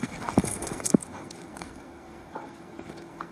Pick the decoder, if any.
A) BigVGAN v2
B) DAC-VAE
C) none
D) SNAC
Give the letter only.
D